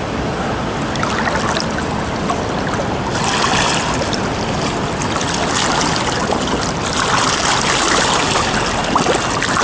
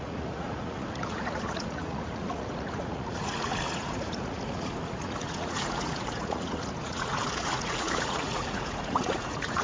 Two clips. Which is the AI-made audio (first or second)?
second